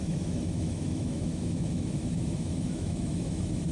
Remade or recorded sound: remade